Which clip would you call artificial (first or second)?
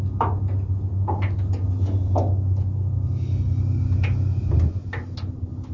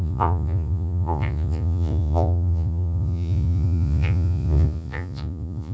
second